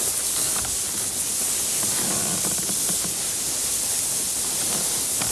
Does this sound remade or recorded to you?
recorded